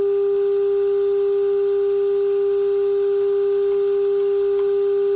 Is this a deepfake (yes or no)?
no